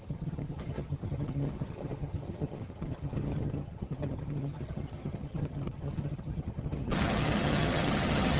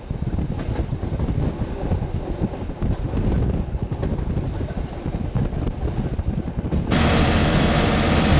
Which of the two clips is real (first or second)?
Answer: second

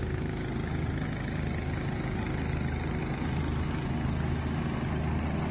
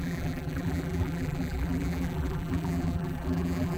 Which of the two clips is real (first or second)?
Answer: first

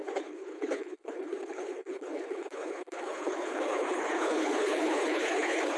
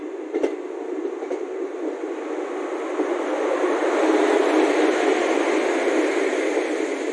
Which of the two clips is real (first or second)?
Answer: second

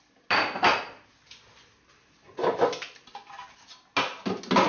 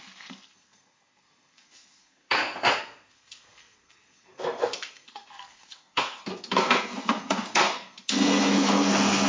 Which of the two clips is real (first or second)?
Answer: first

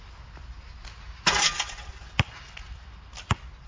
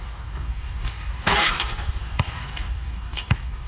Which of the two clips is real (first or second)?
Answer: first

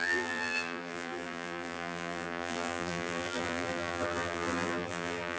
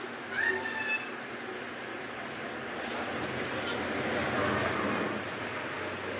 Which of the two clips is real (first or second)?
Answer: second